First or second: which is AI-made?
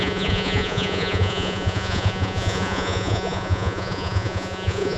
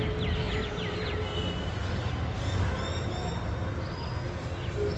first